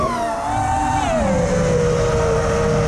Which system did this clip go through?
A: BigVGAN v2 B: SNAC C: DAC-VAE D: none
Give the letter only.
D